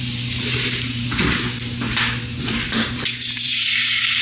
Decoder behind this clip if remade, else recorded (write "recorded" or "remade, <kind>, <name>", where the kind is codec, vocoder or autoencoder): remade, vocoder, BigVGAN v2